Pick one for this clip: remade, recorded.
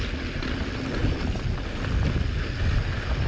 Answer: recorded